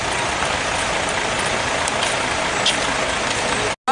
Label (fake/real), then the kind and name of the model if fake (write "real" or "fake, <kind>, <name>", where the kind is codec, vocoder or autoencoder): real